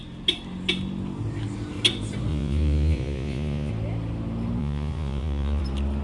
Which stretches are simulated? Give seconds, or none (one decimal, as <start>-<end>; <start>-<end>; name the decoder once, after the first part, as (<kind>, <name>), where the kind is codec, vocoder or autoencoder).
2.3-3.7 (vocoder, Vocos); 4.6-5.6